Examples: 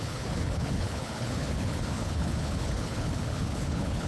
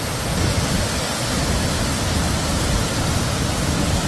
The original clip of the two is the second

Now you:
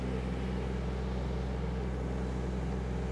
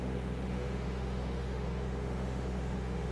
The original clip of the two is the first